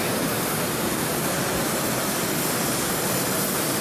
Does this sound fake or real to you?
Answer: real